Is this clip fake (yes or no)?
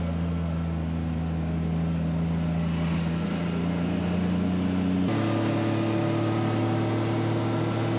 no